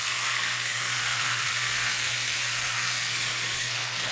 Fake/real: fake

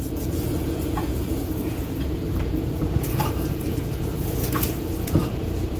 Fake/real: fake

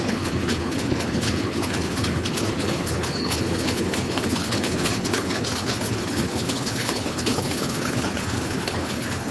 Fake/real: fake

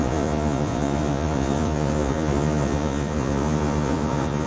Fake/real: fake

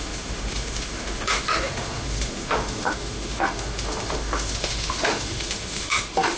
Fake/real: fake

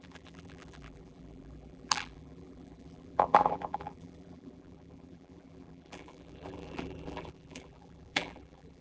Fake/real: fake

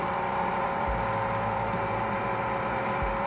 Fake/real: fake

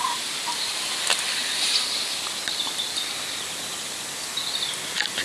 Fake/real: real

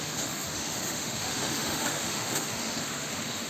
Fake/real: fake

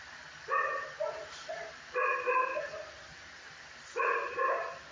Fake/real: fake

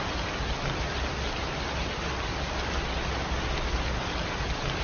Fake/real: real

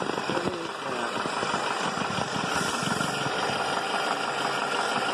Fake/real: real